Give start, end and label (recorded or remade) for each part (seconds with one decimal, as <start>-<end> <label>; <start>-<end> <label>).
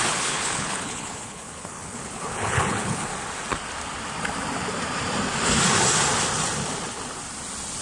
0.0-3.1 remade; 3.1-7.8 recorded